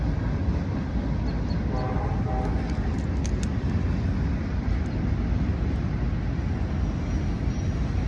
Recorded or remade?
recorded